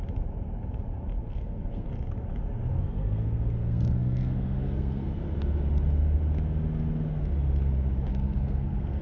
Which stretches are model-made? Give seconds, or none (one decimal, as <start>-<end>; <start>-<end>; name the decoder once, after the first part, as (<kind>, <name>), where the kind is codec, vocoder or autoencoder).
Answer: 1.2-1.9 (codec, SNAC); 2.7-5.2; 8.1-9.0